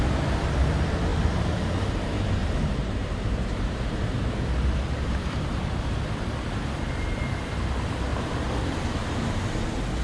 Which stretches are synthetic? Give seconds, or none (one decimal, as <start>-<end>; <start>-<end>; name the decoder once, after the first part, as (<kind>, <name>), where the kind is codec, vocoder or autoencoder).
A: 1.1-2.0 (vocoder, BigVGAN v2); 2.4-5.8; 8.1-9.4